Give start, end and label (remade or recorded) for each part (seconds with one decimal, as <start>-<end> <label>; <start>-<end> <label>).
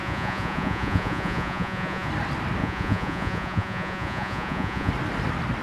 0.0-2.1 remade; 2.1-2.6 recorded; 2.6-4.9 remade; 4.9-5.6 recorded